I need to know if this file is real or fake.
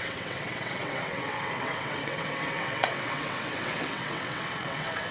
fake